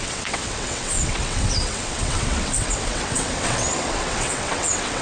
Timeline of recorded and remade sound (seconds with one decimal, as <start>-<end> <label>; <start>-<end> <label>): 0.0-5.0 remade

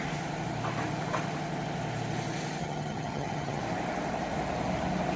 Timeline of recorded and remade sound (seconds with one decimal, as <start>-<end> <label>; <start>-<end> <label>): 0.0-2.6 recorded; 2.6-3.6 remade; 3.6-5.2 recorded

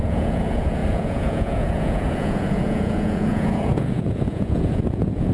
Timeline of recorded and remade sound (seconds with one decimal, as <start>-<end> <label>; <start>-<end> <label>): 0.0-5.3 remade

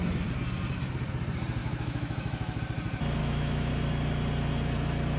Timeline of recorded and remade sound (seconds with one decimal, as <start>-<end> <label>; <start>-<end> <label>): 0.0-1.6 recorded; 1.6-2.6 remade; 2.6-3.2 recorded; 3.2-3.7 remade; 3.7-5.2 recorded

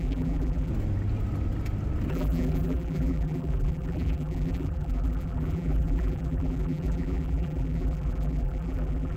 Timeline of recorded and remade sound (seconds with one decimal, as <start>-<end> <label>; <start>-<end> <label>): 0.0-0.7 remade; 0.7-2.1 recorded; 2.1-9.2 remade

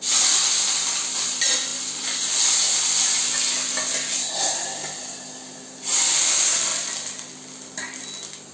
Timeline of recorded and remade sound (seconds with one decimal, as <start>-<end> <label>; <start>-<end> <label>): 0.0-8.5 recorded

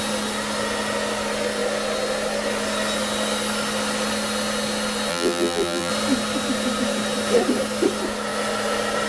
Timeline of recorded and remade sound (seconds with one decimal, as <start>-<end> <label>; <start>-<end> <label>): 0.0-5.1 recorded; 5.1-5.9 remade; 5.9-9.1 recorded